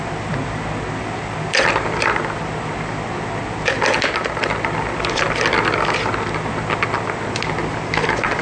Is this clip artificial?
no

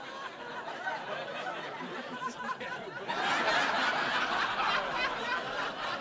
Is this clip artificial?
no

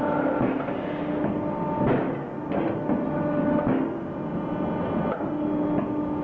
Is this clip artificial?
no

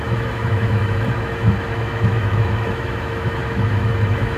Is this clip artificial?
yes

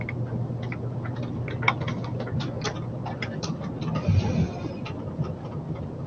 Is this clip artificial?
no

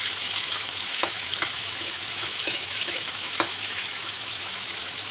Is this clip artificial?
yes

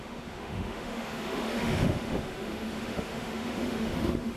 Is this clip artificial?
yes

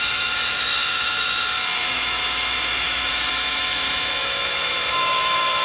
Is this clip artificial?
yes